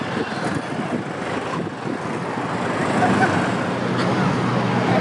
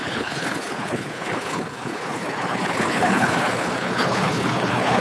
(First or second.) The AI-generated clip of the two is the second